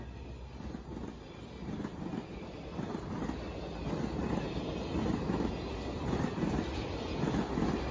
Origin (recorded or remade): recorded